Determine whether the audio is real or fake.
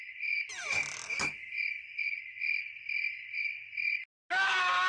real